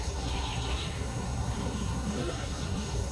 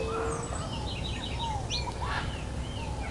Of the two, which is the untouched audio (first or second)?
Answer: second